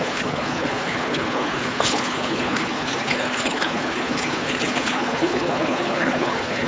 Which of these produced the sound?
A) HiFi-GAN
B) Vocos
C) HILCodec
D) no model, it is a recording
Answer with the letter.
C